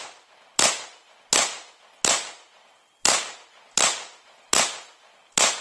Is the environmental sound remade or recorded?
recorded